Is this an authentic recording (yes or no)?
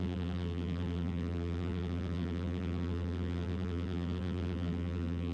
no